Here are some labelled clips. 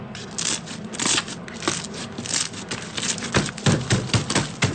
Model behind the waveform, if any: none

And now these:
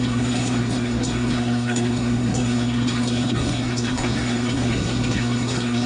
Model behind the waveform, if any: codec, SNAC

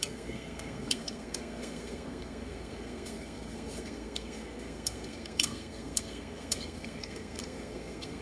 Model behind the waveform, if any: codec, SNAC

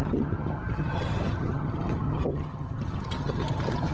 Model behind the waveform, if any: vocoder, HiFi-GAN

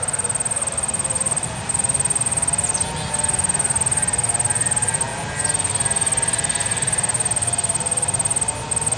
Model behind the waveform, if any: none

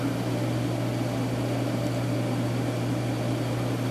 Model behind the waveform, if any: none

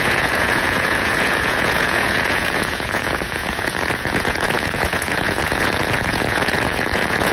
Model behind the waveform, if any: vocoder, Vocos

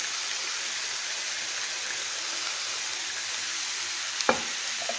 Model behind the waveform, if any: none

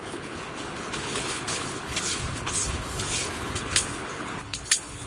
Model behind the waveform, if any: codec, HILCodec